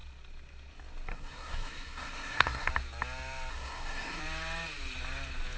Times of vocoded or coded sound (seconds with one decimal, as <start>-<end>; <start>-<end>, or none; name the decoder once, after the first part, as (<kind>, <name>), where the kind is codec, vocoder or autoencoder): 1.1-2.7 (codec, SNAC); 3.5-4.2

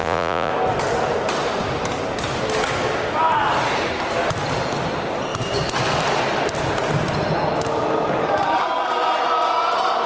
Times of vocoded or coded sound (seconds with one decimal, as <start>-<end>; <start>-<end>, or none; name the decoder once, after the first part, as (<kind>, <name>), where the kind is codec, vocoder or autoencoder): 0.0-0.5 (vocoder, Vocos)

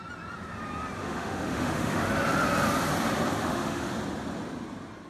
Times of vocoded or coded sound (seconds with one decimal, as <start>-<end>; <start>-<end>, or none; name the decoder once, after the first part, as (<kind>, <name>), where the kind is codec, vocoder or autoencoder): 1.0-2.1 (autoencoder, DAC-VAE); 3.4-3.9

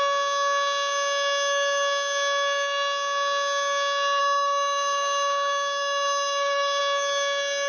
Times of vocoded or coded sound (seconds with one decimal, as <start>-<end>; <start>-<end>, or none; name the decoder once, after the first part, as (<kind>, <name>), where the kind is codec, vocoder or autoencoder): 4.2-6.8 (codec, DAC)